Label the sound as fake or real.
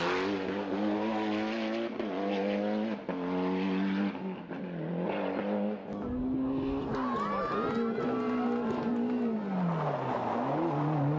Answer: real